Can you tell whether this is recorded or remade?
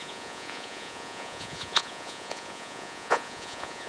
remade